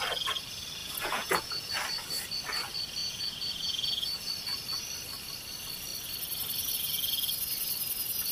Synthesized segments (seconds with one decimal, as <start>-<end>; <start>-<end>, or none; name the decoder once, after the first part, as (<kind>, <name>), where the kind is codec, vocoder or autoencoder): 0.8-1.7 (vocoder, Vocos); 3.0-4.3